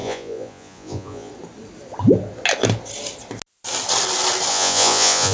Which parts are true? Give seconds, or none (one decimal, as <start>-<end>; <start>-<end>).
1.3-4.5